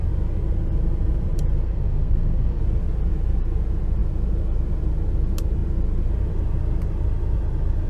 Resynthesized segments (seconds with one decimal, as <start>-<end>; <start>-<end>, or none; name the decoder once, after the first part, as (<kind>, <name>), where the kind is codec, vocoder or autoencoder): 1.6-2.6 (codec, SNAC)